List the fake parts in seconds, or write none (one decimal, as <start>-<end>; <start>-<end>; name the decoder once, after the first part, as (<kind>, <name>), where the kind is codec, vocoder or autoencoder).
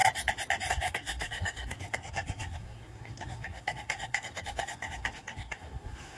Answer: 0.7-6.2 (codec, SNAC)